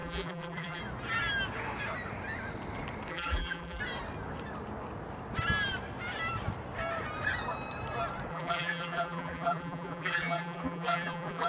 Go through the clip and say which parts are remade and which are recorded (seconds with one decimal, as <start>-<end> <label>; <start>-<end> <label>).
0.0-0.8 remade; 0.8-3.1 recorded; 3.1-3.8 remade; 3.8-8.3 recorded; 8.3-11.5 remade